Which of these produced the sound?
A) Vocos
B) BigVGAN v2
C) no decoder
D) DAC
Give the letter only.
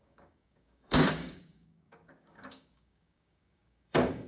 D